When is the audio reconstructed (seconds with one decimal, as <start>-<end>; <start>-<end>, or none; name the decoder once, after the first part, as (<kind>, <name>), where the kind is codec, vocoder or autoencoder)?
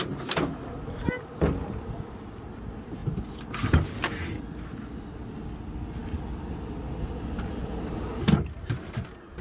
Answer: none